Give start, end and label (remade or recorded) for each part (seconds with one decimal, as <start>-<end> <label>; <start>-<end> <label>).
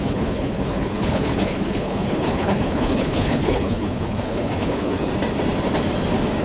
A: 0.0-5.1 remade; 5.1-6.4 recorded